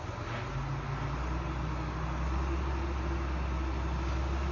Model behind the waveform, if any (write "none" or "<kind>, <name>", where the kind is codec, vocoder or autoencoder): none